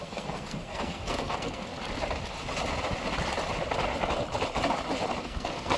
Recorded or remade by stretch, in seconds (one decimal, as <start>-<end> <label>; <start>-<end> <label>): 0.0-1.7 remade; 1.7-5.2 recorded; 5.2-5.8 remade

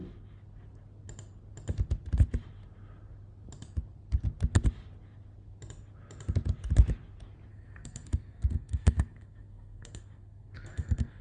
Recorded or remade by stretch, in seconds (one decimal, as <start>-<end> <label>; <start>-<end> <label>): 0.0-7.5 recorded; 7.5-11.2 remade

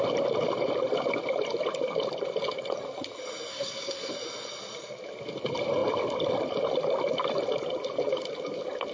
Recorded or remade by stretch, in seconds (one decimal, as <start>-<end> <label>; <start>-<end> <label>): 0.0-3.5 recorded; 3.5-4.1 remade; 4.1-8.9 recorded

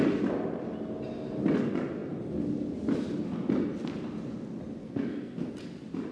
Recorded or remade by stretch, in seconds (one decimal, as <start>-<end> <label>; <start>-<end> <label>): 0.0-4.8 recorded; 4.8-5.5 remade; 5.5-6.1 recorded